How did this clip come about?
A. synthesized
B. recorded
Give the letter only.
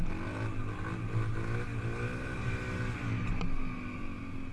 B